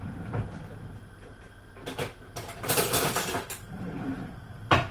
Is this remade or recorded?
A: remade